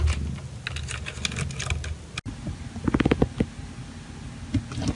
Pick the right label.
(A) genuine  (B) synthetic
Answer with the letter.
A